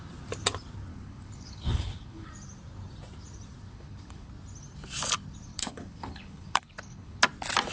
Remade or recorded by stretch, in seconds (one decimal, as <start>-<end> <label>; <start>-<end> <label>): 0.0-0.9 recorded; 0.9-2.3 remade; 2.3-3.7 recorded; 3.7-4.3 remade; 4.3-5.5 recorded; 5.5-7.2 remade; 7.2-7.7 recorded